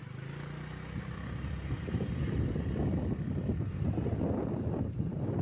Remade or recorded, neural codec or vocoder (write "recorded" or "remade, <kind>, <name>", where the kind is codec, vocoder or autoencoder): recorded